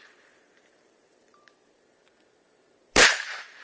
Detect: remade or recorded remade